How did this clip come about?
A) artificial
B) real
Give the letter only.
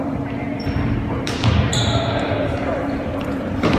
A